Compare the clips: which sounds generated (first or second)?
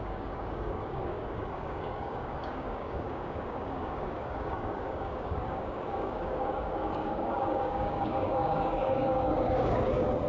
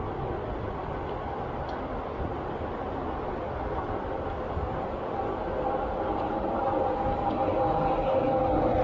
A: first